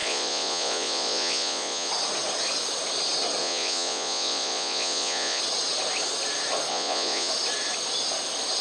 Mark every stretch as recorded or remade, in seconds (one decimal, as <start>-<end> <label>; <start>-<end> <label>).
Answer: 0.0-1.9 remade; 1.9-3.4 recorded; 3.4-5.4 remade; 5.4-6.7 recorded; 6.7-7.3 remade; 7.3-8.6 recorded